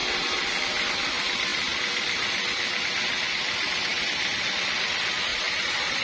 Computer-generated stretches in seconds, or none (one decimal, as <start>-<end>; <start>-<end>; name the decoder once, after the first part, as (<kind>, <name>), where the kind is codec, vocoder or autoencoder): none